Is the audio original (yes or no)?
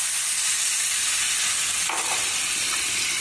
yes